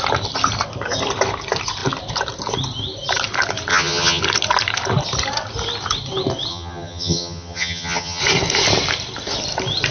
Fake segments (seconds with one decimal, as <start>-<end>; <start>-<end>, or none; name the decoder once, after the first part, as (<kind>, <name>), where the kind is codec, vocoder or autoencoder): 3.7-4.2 (vocoder, HiFi-GAN); 6.5-8.2